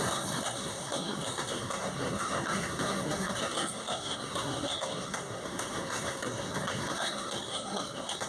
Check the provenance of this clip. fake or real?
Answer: fake